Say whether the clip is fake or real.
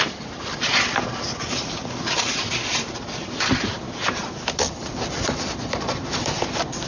fake